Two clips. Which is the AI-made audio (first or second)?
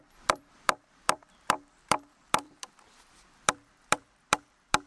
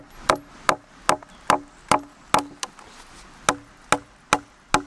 first